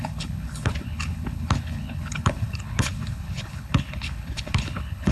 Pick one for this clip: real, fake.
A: fake